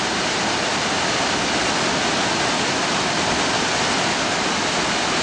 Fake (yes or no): no